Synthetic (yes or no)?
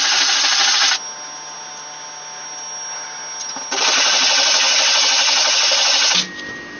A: no